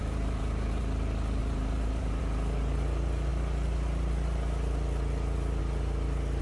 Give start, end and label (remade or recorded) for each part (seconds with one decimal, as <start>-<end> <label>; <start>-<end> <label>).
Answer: 0.0-0.8 remade; 0.8-1.4 recorded; 1.4-2.2 remade; 2.2-6.4 recorded